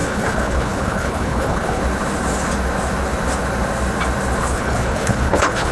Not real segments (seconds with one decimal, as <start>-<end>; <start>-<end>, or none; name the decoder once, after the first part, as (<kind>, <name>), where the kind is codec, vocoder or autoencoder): 0.0-1.8 (codec, HILCodec); 4.4-5.7